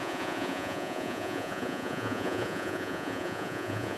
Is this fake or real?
fake